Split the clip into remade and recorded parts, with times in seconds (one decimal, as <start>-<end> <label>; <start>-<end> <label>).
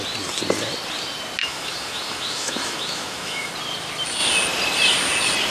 0.0-1.4 recorded; 1.4-3.5 remade; 3.5-5.5 recorded